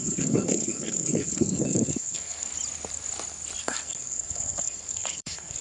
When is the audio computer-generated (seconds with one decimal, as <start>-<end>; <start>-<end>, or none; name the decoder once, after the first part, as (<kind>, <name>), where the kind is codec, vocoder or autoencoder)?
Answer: 0.0-2.5 (codec, SNAC); 3.6-5.6